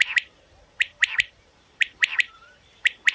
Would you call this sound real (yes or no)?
no